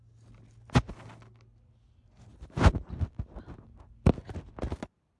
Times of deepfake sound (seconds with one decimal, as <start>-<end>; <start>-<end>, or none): none